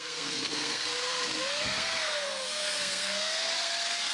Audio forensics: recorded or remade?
remade